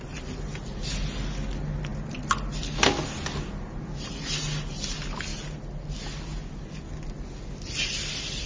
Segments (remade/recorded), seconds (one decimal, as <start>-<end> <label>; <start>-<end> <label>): 0.0-8.5 recorded